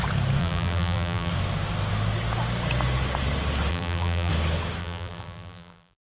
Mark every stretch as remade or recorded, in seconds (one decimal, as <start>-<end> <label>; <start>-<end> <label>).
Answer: 0.0-0.4 recorded; 0.4-1.3 remade; 1.3-3.7 recorded; 3.7-4.3 remade; 4.3-4.8 recorded; 4.8-6.0 remade